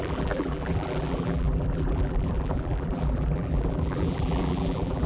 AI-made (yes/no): yes